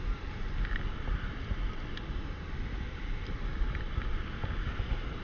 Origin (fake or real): real